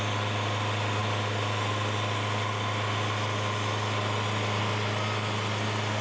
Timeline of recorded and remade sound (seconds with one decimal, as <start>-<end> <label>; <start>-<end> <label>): 0.0-6.0 recorded